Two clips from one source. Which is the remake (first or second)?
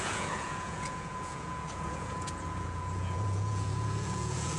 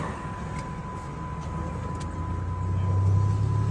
first